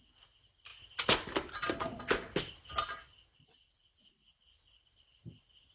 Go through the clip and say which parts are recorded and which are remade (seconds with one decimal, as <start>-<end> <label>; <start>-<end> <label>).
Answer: 0.0-5.7 recorded